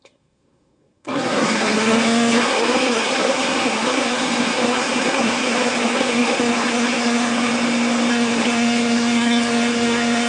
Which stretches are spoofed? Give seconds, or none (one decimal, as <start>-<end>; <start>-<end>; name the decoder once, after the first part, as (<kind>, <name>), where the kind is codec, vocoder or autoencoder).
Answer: 0.0-7.5 (codec, SNAC); 8.1-10.3